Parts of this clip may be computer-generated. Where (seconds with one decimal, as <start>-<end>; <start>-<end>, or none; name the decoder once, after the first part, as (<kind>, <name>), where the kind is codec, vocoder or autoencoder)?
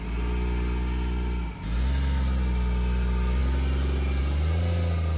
none